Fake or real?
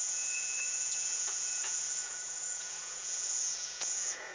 fake